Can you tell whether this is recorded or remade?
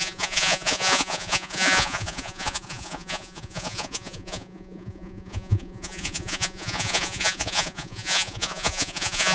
remade